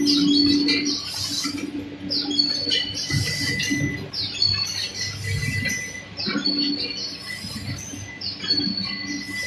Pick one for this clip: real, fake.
real